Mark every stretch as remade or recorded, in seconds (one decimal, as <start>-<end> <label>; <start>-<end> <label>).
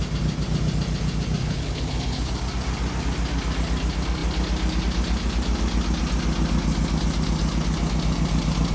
0.0-1.4 recorded; 1.4-2.3 remade; 2.3-8.7 recorded